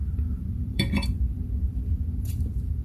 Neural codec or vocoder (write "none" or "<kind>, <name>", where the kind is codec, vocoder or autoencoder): vocoder, BigVGAN v2